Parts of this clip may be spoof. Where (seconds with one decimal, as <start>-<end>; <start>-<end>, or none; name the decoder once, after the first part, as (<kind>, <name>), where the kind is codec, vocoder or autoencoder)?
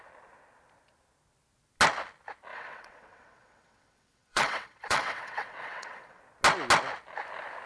2.5-6.2 (vocoder, WaveNeXt)